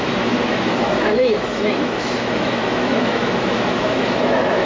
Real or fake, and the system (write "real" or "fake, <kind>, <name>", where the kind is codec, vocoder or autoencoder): fake, autoencoder, DAC-VAE